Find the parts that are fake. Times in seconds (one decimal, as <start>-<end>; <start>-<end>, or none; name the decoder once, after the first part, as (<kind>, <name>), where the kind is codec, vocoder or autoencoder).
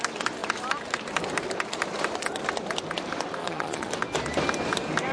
3.4-3.9 (vocoder, Vocos)